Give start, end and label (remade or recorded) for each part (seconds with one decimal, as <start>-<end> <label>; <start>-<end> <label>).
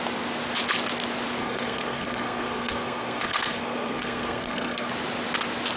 0.0-1.4 recorded; 1.4-4.9 remade; 4.9-5.8 recorded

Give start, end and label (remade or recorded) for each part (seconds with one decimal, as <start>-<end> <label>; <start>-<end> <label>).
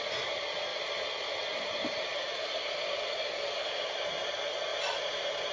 0.0-0.7 recorded; 0.7-3.9 remade; 3.9-4.7 recorded; 4.7-5.5 remade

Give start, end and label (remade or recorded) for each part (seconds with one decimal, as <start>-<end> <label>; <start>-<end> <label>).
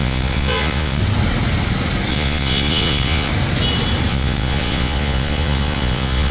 0.0-1.0 remade; 1.0-2.1 recorded; 2.1-3.3 remade; 3.3-4.1 recorded; 4.1-6.3 remade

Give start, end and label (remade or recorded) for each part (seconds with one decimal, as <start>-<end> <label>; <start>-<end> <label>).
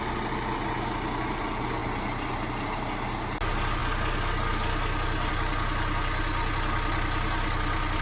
0.0-8.0 recorded